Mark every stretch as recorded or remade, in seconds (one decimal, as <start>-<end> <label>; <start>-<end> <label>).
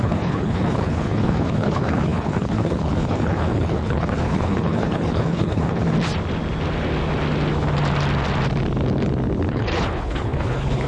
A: 0.0-5.8 remade; 5.8-9.5 recorded; 9.5-10.9 remade